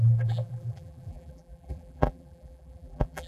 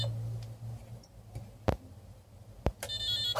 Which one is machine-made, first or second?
first